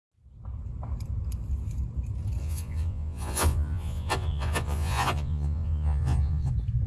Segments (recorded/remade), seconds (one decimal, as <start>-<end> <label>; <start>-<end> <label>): 0.0-2.4 recorded; 2.4-6.5 remade; 6.5-6.9 recorded